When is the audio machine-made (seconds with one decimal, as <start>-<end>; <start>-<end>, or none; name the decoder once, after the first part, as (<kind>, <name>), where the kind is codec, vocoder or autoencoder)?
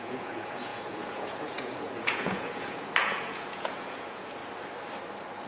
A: 0.0-4.4 (vocoder, Vocos)